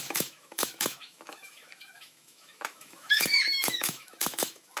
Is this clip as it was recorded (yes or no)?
no